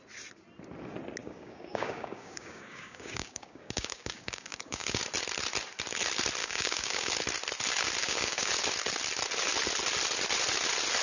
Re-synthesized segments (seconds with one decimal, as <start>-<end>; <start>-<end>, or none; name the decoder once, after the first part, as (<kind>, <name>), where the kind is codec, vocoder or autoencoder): 1.2-5.0 (codec, DAC); 6.4-7.1; 8.0-8.5

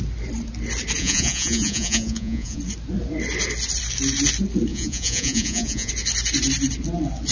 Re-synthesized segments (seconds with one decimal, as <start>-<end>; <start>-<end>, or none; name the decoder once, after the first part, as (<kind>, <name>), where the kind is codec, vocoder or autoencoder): 1.0-2.6 (vocoder, Vocos); 4.7-5.9

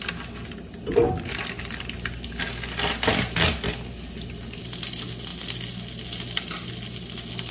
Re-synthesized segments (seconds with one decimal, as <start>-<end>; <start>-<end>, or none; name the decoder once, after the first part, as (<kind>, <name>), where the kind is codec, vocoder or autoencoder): none

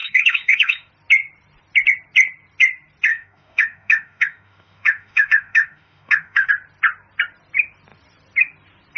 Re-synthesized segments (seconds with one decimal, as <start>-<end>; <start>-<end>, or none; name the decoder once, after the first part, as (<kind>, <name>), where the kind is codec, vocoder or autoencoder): 0.0-0.9 (autoencoder, DAC-VAE); 3.1-6.5

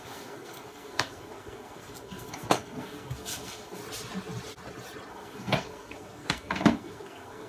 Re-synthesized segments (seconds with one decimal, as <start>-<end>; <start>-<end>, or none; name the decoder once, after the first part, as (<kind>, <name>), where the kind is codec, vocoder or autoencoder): 0.0-3.8 (codec, SNAC); 5.1-7.5